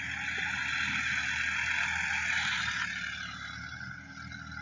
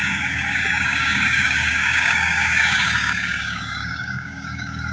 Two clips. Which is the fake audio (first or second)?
second